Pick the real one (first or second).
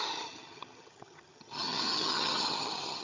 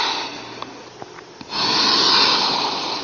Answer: second